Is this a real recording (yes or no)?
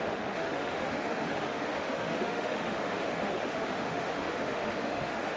no